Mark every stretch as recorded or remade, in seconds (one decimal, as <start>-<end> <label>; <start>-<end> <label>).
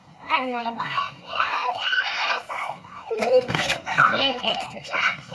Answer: 0.0-5.3 remade